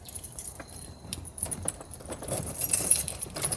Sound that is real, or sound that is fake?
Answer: fake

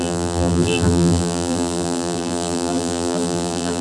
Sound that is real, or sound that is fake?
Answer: fake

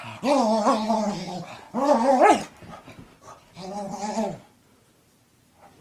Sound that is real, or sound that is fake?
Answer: real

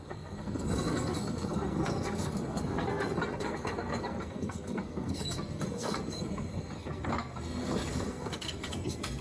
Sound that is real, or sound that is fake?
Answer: fake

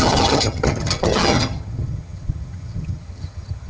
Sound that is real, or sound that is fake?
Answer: fake